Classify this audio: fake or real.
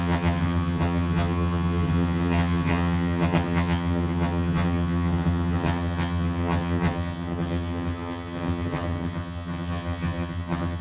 fake